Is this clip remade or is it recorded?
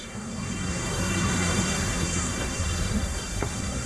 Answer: remade